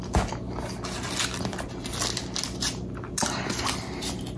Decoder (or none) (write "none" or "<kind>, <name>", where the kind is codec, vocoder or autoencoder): none